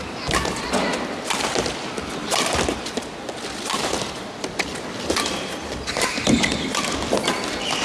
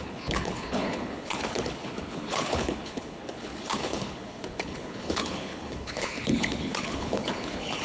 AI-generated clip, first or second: second